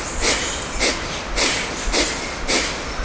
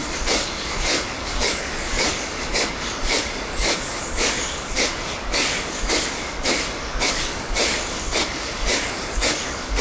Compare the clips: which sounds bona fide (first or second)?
first